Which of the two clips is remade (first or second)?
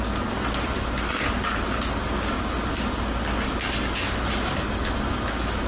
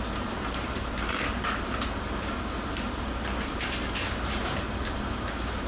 second